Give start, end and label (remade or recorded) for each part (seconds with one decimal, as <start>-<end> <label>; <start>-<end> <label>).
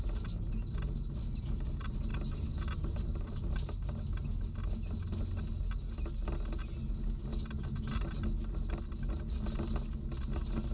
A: 0.0-10.7 recorded